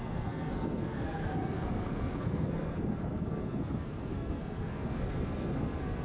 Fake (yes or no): yes